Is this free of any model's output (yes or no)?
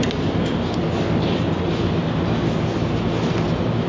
yes